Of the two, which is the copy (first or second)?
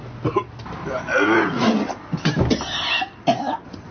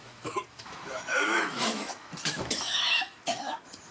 second